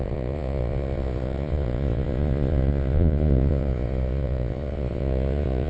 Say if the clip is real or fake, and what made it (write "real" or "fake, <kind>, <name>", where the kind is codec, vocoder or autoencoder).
fake, vocoder, Vocos